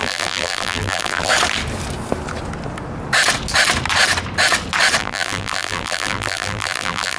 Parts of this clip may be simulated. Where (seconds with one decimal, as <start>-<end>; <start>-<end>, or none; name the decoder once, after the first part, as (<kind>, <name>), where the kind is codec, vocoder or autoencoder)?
0.0-1.3 (vocoder, BigVGAN v2); 5.0-7.2